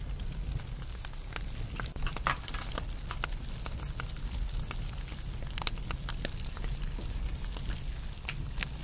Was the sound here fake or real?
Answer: real